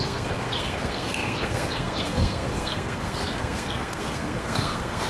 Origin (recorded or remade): remade